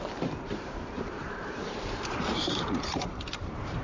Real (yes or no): no